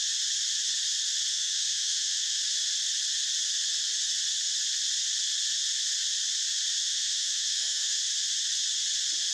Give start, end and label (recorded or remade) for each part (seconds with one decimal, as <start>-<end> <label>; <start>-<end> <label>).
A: 0.0-1.3 recorded; 1.3-2.4 remade; 2.4-6.8 recorded; 6.8-8.0 remade; 8.0-9.3 recorded